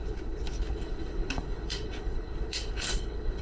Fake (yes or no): yes